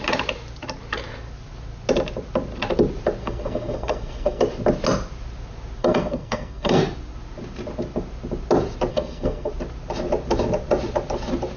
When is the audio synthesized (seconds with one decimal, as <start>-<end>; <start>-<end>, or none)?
3.2-4.4; 5.8-6.8; 8.9-9.5